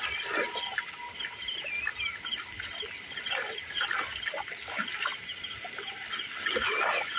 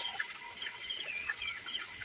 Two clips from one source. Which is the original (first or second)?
first